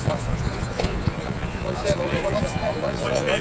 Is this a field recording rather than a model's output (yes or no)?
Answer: no